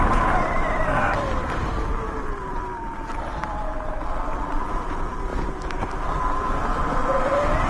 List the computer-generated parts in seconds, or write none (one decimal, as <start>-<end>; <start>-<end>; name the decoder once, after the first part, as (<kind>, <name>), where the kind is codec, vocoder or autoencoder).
none